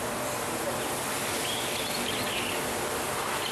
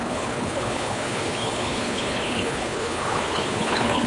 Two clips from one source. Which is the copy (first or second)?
second